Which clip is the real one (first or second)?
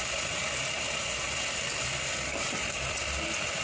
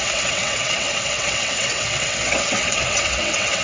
first